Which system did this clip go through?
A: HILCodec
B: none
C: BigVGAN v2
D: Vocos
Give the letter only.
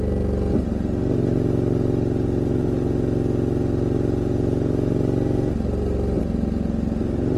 B